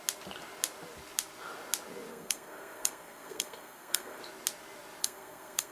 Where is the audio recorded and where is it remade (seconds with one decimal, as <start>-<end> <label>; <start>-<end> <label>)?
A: 0.0-2.1 recorded; 2.1-4.2 remade; 4.2-5.0 recorded; 5.0-5.7 remade